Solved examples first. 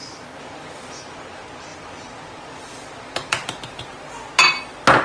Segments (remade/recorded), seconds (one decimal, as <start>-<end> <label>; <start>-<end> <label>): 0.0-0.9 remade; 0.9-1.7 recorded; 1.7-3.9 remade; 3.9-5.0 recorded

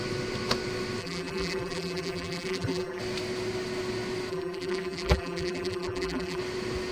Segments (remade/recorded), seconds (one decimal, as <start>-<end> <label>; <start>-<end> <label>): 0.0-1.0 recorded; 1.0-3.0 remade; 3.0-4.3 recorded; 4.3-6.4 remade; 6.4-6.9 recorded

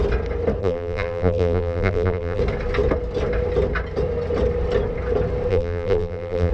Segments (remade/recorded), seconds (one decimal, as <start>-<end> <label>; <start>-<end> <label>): 0.0-0.6 recorded; 0.6-2.4 remade; 2.4-5.5 recorded; 5.5-6.5 remade

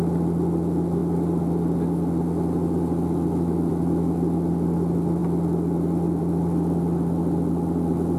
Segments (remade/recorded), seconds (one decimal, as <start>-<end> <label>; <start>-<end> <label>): 0.0-8.2 recorded

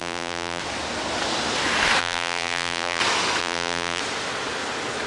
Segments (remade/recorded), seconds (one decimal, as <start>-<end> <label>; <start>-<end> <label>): 0.0-0.6 remade; 0.6-2.0 recorded; 2.0-3.0 remade; 3.0-3.4 recorded; 3.4-4.0 remade; 4.0-5.1 recorded

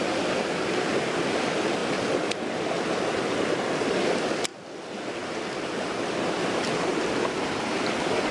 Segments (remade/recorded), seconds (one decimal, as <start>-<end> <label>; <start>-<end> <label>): 0.0-1.8 remade; 1.8-2.3 recorded; 2.3-4.5 remade; 4.5-5.4 recorded; 5.4-6.9 remade; 6.9-7.6 recorded; 7.6-8.3 remade